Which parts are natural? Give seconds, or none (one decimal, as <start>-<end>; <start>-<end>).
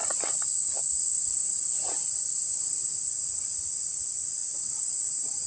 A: 0.5-2.0; 3.3-5.5